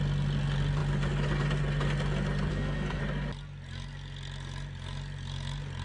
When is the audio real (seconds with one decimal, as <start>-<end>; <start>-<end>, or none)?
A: 0.0-2.5; 3.0-5.8